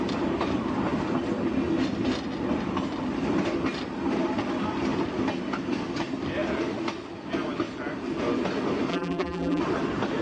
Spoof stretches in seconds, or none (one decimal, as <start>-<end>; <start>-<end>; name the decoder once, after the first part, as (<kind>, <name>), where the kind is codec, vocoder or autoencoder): 8.9-9.6 (vocoder, BigVGAN v2)